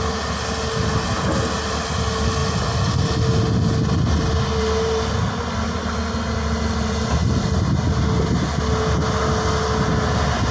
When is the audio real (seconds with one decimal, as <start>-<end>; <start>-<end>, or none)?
0.0-10.5